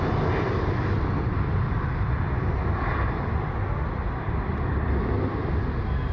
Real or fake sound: real